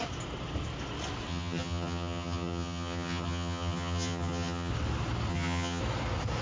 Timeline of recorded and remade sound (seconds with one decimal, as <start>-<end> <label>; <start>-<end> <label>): 0.0-1.3 recorded; 1.3-4.7 remade; 4.7-5.3 recorded; 5.3-5.8 remade; 5.8-6.4 recorded